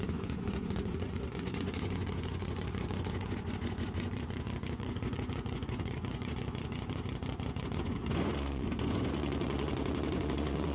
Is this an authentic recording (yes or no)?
no